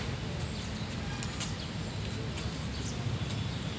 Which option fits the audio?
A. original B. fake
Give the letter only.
A